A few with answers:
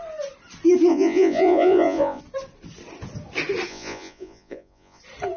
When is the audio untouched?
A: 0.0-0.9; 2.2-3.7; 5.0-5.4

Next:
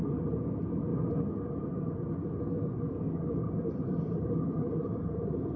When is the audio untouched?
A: 0.0-5.6

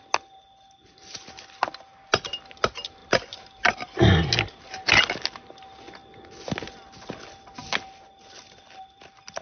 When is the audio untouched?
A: 0.0-9.4

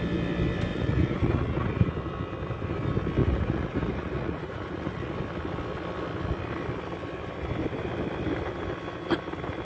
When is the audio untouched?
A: 0.0-0.7; 1.9-3.2; 5.1-9.6

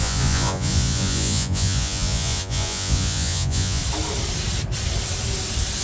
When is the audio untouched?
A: 3.8-5.8